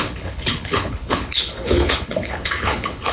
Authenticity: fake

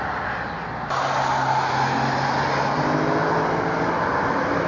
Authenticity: real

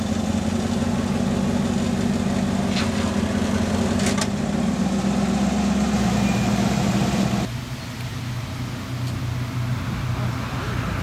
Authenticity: real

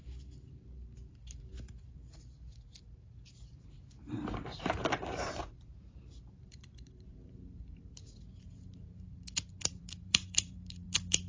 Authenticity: fake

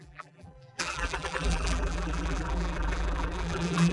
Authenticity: fake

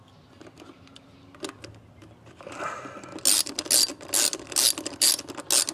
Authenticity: real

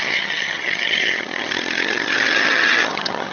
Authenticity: fake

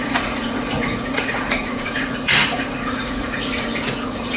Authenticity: fake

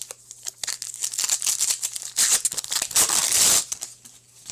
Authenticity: real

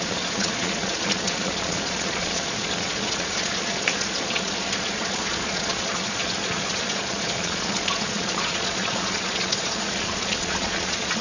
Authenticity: fake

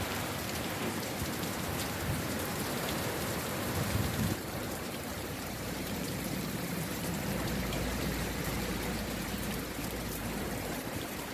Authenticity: fake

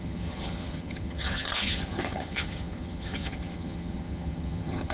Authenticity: fake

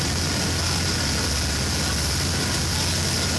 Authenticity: real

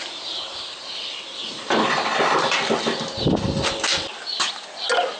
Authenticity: real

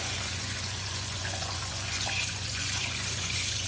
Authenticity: fake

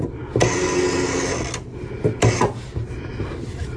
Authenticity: real